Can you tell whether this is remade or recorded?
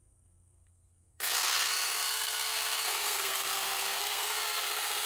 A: remade